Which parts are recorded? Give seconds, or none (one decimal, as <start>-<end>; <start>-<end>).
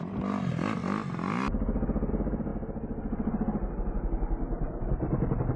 0.8-2.1